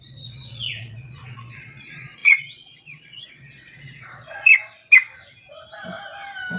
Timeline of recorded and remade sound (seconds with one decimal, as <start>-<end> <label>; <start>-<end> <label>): 0.0-4.5 remade; 4.5-6.6 recorded